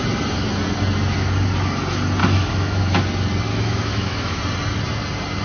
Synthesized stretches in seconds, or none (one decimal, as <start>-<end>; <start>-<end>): 2.2-3.0; 3.5-4.4